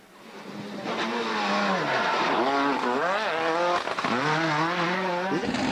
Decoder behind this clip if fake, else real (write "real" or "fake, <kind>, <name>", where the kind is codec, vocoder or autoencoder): real